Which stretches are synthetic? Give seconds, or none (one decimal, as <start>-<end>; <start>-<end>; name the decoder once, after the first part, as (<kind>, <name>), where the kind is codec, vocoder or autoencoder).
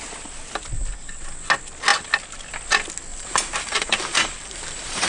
3.1-5.1 (vocoder, BigVGAN v2)